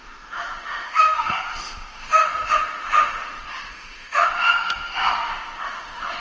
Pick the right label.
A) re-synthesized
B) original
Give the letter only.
A